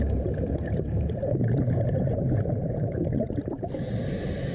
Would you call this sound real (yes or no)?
no